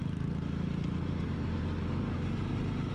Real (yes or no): no